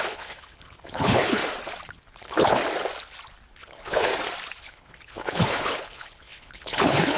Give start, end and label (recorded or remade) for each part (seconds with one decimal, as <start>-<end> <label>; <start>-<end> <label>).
0.0-1.4 remade; 1.4-2.2 recorded; 2.2-2.6 remade; 2.6-3.6 recorded; 3.6-4.1 remade; 4.1-4.6 recorded; 4.6-7.2 remade